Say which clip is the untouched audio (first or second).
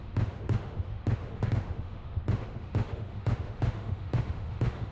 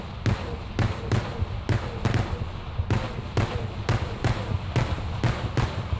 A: second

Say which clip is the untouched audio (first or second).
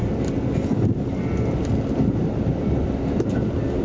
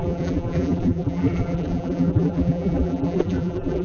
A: first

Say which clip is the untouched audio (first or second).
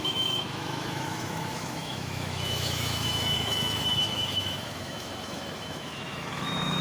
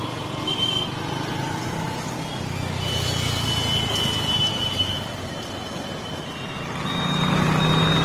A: second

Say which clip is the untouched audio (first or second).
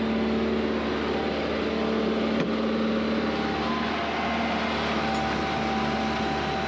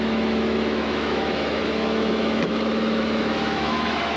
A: first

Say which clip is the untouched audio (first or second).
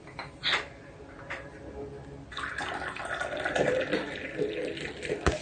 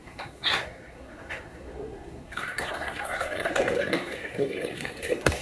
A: first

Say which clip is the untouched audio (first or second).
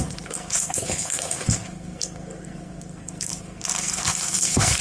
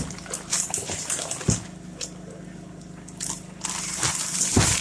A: second